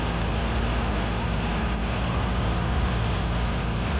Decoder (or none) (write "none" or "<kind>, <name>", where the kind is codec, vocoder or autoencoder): none